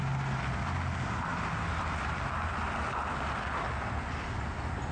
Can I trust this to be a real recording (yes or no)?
yes